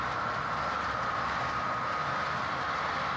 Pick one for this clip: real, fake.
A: real